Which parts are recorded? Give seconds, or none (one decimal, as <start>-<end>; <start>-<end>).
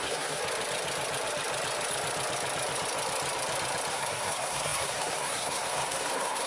0.4-3.9